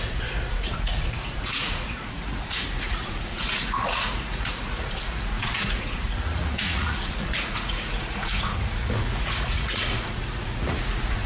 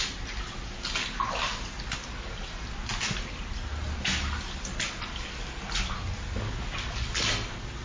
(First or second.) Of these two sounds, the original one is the second